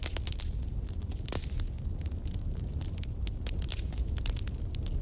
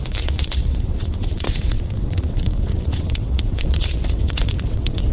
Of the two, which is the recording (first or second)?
first